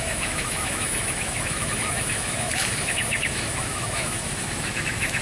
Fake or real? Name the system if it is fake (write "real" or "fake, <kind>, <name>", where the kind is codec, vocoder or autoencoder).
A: fake, autoencoder, DAC-VAE